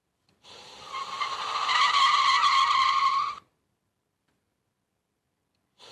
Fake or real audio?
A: real